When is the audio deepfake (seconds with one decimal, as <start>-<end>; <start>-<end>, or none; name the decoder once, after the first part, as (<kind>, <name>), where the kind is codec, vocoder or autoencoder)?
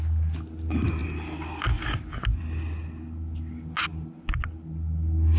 none